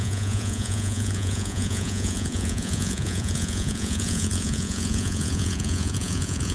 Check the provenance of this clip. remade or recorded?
remade